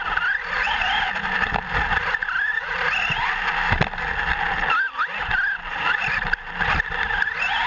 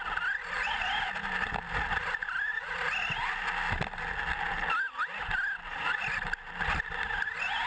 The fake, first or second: first